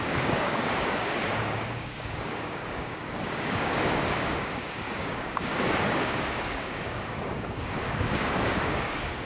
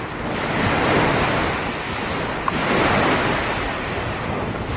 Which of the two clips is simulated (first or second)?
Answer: first